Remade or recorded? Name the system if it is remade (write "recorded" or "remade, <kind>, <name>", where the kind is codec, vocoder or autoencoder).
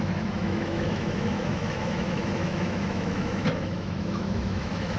remade, autoencoder, DAC-VAE